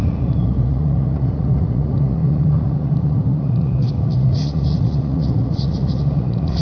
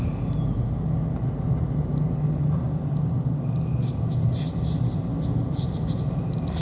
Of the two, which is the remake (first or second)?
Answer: first